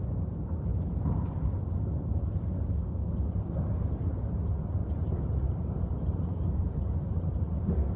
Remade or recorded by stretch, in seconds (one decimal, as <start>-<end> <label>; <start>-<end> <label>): 0.0-4.8 recorded; 4.8-8.0 remade